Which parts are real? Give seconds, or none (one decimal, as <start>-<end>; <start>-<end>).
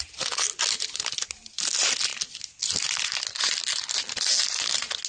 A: 0.0-5.1